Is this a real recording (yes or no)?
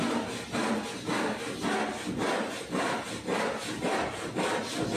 yes